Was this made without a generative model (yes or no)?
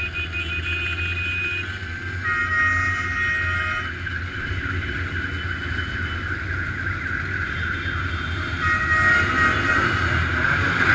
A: yes